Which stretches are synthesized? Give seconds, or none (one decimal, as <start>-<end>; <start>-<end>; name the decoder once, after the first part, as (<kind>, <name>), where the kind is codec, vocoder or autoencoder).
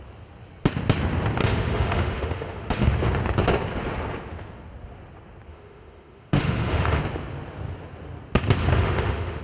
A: 1.4-2.9 (autoencoder, DAC-VAE); 5.5-7.0; 8.6-9.4